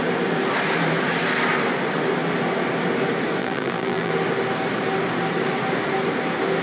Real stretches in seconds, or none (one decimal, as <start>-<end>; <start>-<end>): 0.0-3.4; 4.1-6.6

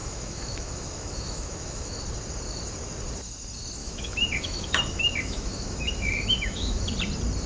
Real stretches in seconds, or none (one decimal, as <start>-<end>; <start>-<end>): 2.0-3.8; 6.9-7.5

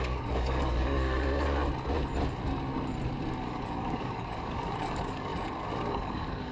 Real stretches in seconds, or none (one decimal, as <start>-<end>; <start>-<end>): 1.6-3.4; 5.3-5.9

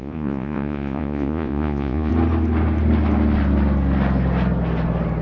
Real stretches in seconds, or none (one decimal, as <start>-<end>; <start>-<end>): 2.1-5.2

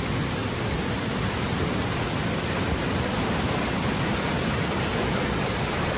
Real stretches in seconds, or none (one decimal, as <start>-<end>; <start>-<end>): 0.0-6.0

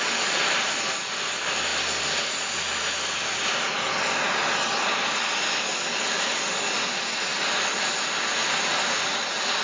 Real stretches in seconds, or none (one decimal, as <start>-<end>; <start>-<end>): 0.0-9.6